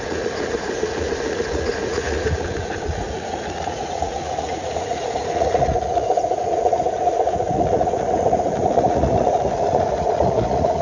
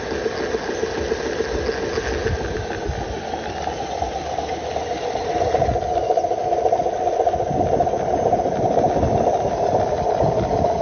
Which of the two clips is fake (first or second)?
first